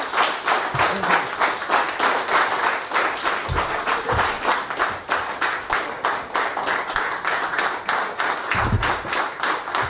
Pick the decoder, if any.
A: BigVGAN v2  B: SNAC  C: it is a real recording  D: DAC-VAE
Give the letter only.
C